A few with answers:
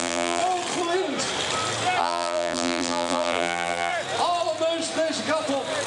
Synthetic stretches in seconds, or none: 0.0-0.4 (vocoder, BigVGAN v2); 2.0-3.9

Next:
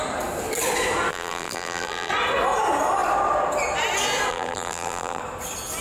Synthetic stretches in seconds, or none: 1.1-2.1 (vocoder, BigVGAN v2); 4.3-5.2